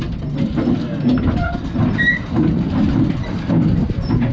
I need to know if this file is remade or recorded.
recorded